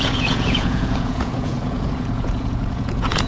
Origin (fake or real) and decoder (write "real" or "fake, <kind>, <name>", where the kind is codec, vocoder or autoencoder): fake, vocoder, Vocos